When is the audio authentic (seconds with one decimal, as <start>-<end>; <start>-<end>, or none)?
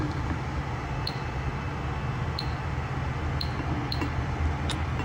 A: 0.0-5.0